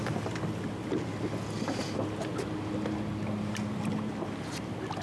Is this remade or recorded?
recorded